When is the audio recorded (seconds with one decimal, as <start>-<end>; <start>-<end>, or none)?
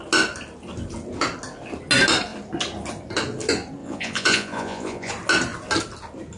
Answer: 0.0-3.8; 5.1-6.4